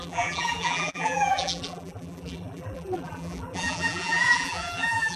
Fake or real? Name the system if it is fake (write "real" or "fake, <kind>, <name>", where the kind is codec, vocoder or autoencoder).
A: fake, vocoder, BigVGAN v2